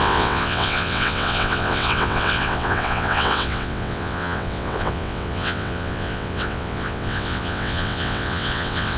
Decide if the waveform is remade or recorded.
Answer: remade